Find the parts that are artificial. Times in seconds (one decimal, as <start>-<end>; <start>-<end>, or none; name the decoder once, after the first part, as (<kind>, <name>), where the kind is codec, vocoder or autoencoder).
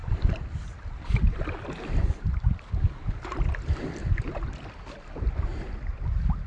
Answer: none